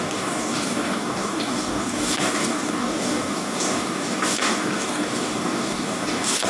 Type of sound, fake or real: fake